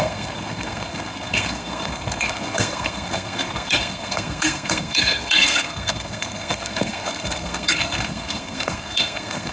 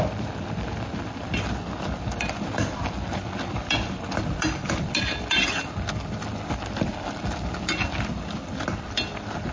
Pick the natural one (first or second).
second